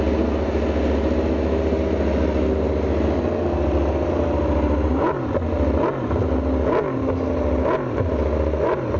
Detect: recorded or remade recorded